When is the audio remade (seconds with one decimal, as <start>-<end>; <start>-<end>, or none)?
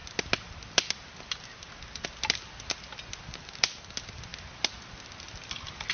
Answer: none